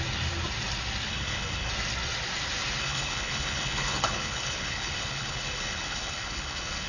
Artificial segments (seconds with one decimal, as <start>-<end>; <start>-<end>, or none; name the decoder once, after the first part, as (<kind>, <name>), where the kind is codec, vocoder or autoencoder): 1.1-1.7 (codec, HILCodec); 2.8-6.9